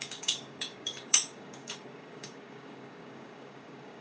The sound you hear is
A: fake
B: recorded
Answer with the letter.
A